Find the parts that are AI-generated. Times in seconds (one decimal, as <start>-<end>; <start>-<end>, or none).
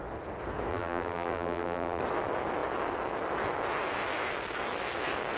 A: 0.7-2.0